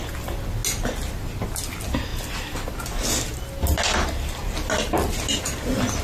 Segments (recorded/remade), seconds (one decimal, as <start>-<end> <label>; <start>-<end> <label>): 0.0-6.0 recorded